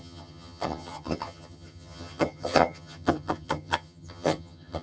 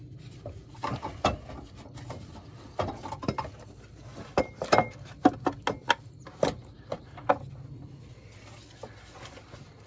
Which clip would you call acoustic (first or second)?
second